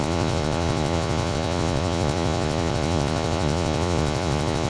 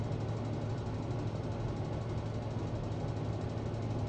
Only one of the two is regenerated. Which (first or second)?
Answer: first